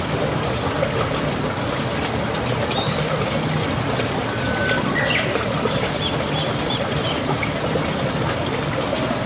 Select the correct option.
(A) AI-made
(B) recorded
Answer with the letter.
B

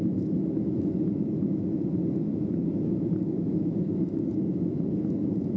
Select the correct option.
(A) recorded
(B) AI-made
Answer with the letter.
B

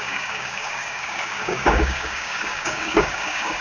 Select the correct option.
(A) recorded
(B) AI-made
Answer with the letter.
B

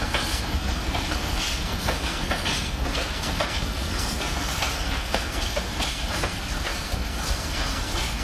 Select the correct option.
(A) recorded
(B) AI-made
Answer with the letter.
B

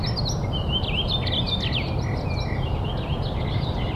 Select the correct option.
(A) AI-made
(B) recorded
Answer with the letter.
B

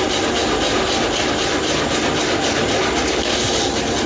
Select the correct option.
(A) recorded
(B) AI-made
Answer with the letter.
A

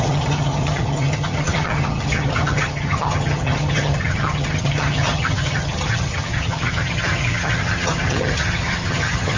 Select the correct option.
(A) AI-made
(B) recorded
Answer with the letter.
A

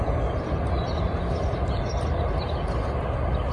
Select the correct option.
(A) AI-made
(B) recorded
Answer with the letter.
B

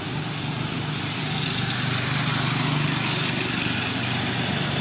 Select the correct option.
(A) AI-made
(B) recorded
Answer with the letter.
B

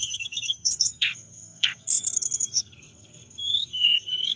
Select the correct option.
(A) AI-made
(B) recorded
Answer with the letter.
A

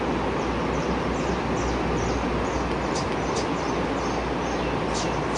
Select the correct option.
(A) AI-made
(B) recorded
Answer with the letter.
B